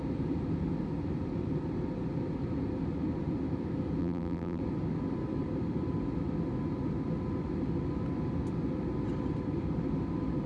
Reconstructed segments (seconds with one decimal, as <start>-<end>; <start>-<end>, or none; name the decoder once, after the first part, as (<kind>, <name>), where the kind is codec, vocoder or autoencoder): 4.0-4.6 (vocoder, BigVGAN v2)